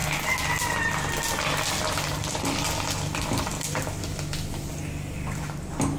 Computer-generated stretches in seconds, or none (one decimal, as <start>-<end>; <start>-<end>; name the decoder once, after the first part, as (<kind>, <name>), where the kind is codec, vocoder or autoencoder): none